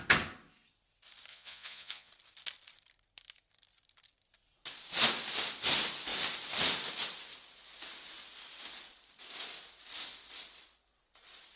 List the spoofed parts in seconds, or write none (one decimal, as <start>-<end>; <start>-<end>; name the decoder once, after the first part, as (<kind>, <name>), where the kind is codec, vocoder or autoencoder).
1.3-2.1 (vocoder, Vocos)